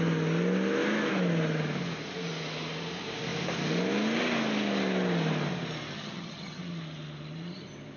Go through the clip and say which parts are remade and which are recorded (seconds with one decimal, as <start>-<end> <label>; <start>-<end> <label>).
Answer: 0.0-5.9 recorded; 5.9-6.6 remade; 6.6-8.0 recorded